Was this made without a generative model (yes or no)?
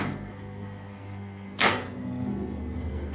no